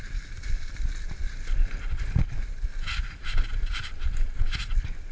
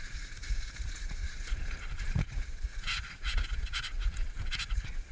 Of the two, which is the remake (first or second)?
second